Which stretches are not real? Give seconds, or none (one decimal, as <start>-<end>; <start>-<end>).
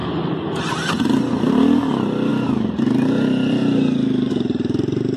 0.0-2.3; 2.8-3.6; 4.3-5.2